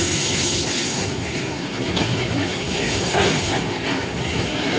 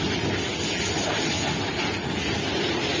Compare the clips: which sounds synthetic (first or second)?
first